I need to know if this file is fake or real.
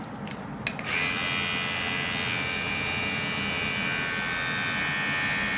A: real